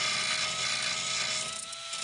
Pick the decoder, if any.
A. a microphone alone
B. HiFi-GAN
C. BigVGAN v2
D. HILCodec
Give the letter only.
A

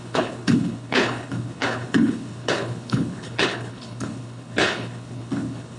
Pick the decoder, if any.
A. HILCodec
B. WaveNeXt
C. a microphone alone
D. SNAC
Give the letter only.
A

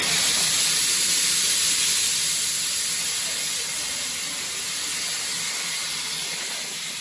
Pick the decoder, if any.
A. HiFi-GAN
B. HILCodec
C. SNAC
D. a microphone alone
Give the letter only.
D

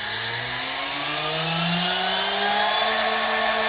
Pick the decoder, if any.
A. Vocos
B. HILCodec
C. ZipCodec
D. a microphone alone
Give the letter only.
D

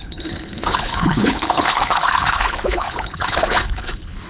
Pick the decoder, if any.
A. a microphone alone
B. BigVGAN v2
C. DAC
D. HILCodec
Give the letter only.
D